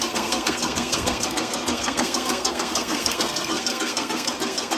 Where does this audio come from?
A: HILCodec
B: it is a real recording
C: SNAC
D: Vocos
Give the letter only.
C